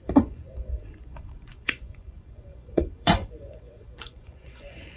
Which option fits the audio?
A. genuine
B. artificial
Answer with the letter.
B